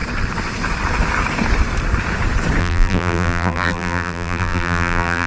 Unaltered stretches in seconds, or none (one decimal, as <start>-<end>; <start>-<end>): 0.0-2.6